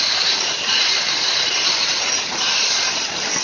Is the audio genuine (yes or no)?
no